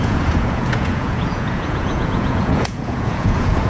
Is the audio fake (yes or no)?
yes